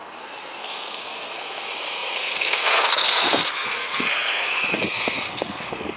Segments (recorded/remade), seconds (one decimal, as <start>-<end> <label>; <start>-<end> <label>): 0.0-6.0 remade